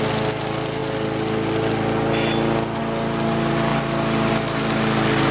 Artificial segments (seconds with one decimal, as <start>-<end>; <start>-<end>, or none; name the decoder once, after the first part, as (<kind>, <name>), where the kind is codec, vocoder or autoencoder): none

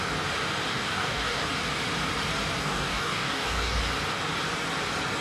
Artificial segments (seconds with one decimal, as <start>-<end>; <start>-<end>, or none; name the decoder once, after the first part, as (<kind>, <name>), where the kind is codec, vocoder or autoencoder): 0.7-1.5 (codec, DAC); 2.6-3.8